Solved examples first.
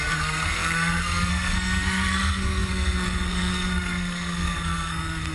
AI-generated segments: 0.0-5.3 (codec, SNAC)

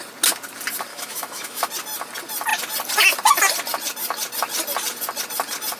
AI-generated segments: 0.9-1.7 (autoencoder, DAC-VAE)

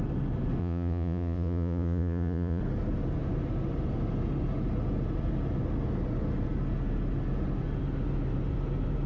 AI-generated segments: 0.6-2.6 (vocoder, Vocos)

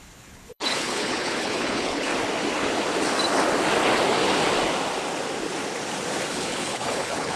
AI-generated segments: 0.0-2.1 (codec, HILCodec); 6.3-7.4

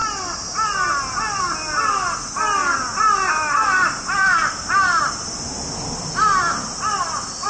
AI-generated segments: none